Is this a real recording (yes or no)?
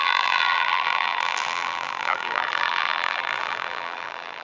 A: no